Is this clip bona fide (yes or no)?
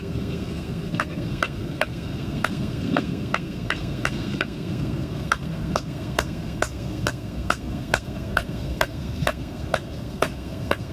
no